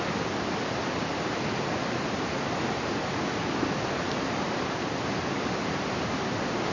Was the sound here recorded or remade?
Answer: recorded